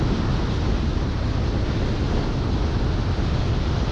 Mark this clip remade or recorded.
recorded